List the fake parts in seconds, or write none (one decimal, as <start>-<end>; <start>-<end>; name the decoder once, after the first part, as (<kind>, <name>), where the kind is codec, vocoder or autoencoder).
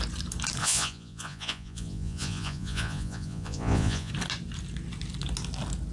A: 0.6-4.1 (vocoder, Vocos)